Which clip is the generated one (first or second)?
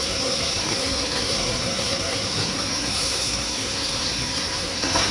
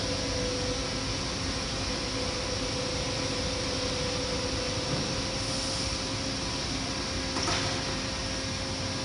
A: first